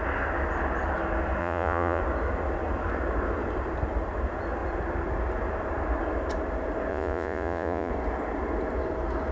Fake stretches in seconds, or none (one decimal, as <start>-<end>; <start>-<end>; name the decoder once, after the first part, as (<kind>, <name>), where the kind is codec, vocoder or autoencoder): 1.4-2.0 (vocoder, Vocos); 6.9-7.9